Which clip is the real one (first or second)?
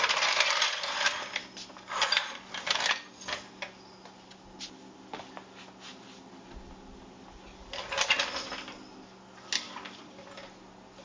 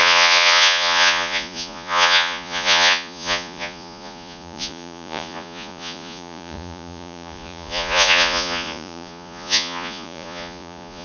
first